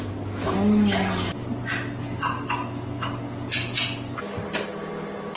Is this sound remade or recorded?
recorded